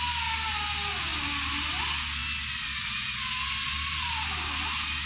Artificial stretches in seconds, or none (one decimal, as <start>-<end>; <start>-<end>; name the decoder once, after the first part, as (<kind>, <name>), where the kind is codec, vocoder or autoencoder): none